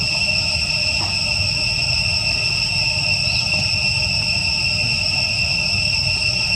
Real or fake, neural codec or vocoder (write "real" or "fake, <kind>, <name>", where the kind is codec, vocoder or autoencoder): real